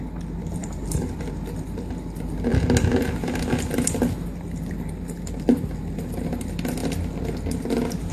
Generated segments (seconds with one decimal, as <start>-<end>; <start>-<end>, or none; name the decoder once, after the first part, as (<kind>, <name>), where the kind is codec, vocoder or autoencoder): 0.6-1.2 (vocoder, BigVGAN v2)